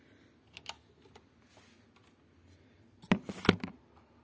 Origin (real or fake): real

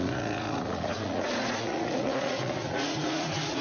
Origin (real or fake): fake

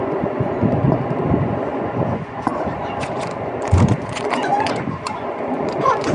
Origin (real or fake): fake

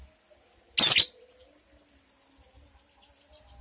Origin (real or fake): real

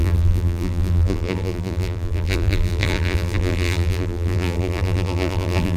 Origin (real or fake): fake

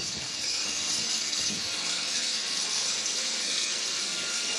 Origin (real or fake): fake